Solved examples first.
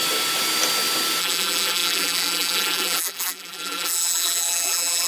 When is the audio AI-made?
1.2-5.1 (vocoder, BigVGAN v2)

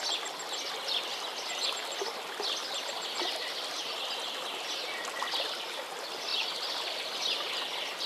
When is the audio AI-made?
none